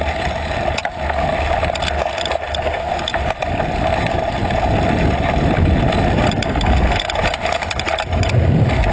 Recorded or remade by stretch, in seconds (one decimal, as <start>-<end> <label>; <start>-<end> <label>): 0.0-8.9 recorded